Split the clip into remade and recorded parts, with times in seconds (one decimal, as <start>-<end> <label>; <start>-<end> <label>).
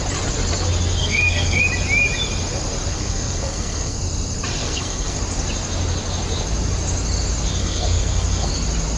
0.0-1.0 recorded; 1.0-1.6 remade; 1.6-2.9 recorded; 2.9-4.0 remade; 4.0-4.6 recorded; 4.6-5.2 remade; 5.2-7.6 recorded; 7.6-8.5 remade; 8.5-9.0 recorded